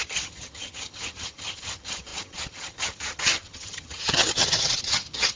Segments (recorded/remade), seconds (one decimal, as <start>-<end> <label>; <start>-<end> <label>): 0.0-5.4 remade